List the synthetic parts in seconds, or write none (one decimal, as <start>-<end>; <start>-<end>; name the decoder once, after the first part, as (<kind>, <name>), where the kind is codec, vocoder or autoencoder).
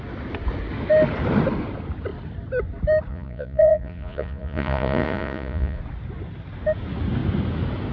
3.1-5.8 (vocoder, Vocos)